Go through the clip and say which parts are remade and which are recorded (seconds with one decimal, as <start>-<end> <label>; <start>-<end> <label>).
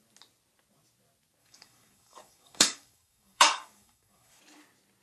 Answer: 0.0-1.4 recorded; 1.4-4.4 remade; 4.4-5.0 recorded